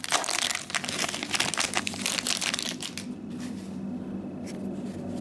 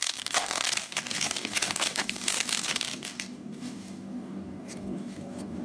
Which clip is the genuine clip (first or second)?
first